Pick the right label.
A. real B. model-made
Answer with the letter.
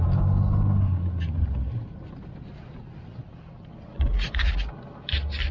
A